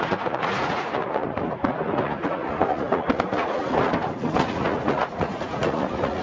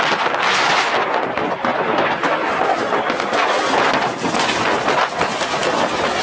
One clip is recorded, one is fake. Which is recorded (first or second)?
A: second